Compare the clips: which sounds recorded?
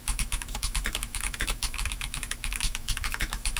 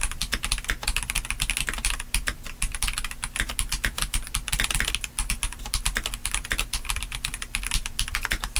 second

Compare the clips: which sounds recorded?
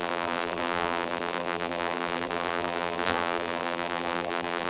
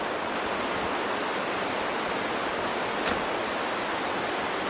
second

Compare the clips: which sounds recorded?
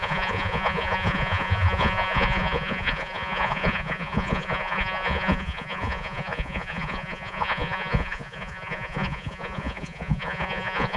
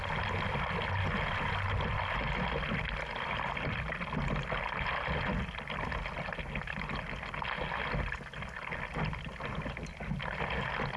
second